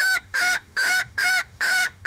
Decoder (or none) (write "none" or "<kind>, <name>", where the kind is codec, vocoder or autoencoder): autoencoder, DAC-VAE